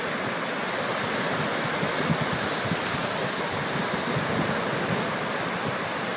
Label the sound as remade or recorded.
recorded